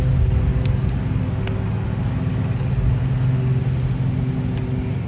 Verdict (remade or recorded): recorded